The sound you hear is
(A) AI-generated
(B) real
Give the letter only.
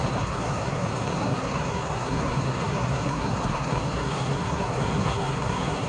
A